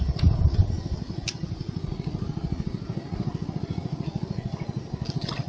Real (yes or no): yes